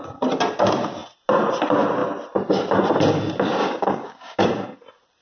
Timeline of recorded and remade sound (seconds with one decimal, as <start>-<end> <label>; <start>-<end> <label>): 0.0-3.6 recorded; 3.6-4.4 remade; 4.4-5.2 recorded